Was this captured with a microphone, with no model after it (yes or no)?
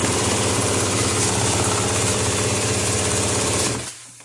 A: no